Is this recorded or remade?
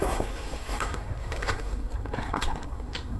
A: remade